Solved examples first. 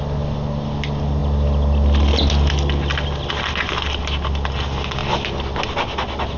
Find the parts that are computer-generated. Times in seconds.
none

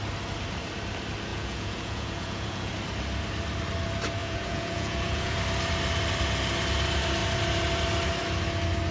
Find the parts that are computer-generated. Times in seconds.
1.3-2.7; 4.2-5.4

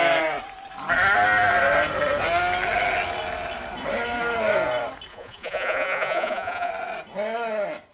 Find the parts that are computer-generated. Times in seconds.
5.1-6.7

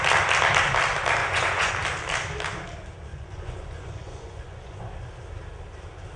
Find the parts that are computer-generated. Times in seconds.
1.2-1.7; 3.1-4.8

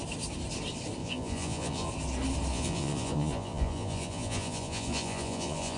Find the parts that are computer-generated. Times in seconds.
1.0-1.9; 2.5-5.8

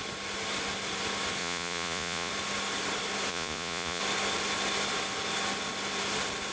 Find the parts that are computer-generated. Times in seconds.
1.4-2.3; 3.3-4.0